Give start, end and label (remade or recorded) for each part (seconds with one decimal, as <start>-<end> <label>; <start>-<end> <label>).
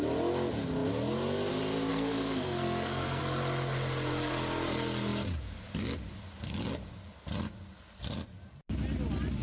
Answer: 0.0-1.9 recorded; 1.9-3.2 remade; 3.2-9.4 recorded